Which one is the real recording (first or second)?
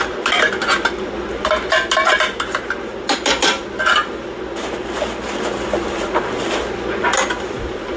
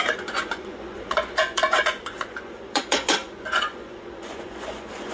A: first